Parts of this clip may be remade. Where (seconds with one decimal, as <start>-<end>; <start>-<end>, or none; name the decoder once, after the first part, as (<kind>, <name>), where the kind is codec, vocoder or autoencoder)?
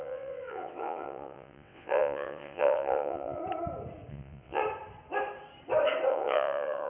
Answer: 0.0-3.4 (vocoder, WaveNeXt); 4.1-4.6; 6.1-6.9